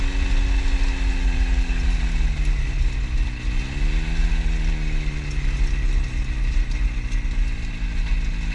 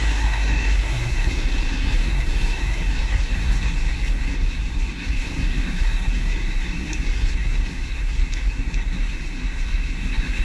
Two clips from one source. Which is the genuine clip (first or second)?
first